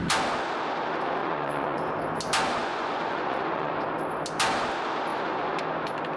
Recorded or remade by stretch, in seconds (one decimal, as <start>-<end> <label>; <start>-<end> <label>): 0.0-1.2 recorded; 1.2-1.8 remade; 1.8-2.6 recorded; 2.6-3.7 remade; 3.7-5.1 recorded; 5.1-5.6 remade; 5.6-6.2 recorded